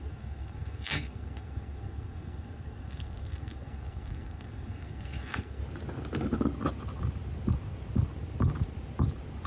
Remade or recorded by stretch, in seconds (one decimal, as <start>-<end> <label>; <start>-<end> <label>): 0.0-5.6 remade; 5.6-9.5 recorded